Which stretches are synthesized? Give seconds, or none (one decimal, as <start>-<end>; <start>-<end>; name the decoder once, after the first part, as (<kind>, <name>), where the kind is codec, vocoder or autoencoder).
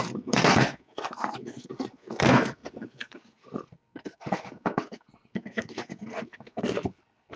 0.0-7.4 (codec, SNAC)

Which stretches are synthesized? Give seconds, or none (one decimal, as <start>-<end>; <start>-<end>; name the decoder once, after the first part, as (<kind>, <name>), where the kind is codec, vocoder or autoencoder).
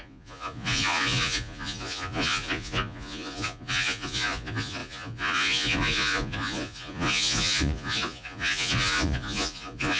0.0-10.0 (vocoder, Vocos)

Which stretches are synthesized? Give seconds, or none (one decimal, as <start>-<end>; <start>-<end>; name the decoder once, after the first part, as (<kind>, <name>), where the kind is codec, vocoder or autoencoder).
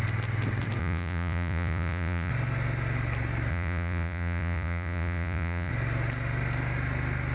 0.8-2.3 (vocoder, Vocos); 3.5-5.7